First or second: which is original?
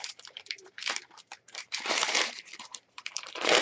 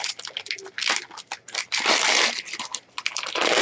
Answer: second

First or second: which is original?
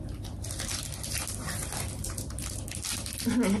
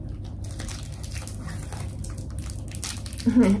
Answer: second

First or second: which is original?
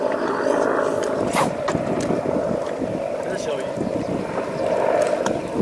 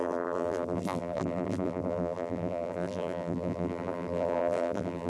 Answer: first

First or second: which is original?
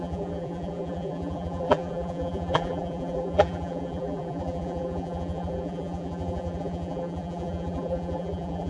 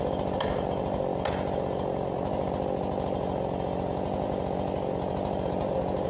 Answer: second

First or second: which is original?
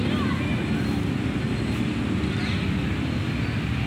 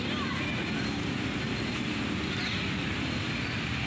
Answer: first